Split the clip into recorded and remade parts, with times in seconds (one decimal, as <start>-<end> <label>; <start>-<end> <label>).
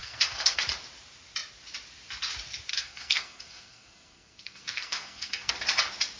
0.0-0.6 remade; 0.6-2.7 recorded; 2.7-5.5 remade; 5.5-6.2 recorded